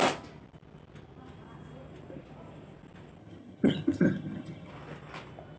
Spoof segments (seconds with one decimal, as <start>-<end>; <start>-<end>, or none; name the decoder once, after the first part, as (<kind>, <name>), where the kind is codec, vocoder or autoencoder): 3.2-4.7 (vocoder, HiFi-GAN)